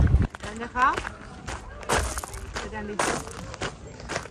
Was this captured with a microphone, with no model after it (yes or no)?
yes